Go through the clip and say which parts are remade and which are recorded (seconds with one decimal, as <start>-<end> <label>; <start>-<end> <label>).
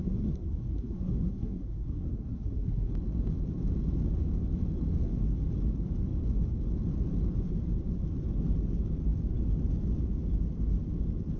0.0-2.9 remade; 2.9-11.4 recorded